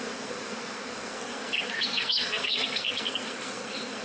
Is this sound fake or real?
fake